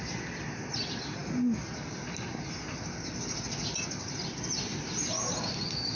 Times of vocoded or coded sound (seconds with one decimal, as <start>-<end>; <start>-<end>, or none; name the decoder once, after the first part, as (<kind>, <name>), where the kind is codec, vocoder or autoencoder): none